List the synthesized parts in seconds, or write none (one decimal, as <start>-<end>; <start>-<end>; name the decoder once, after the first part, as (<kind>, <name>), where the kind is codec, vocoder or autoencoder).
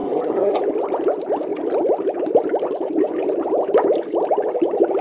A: 0.0-0.6 (codec, SNAC)